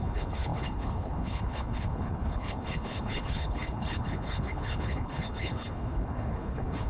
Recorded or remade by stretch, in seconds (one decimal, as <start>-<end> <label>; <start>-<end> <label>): 0.0-6.9 remade